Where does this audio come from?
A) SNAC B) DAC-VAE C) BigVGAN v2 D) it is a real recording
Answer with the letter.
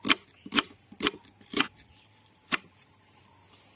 D